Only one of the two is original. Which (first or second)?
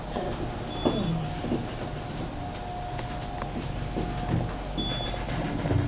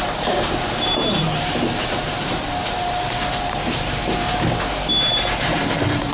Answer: first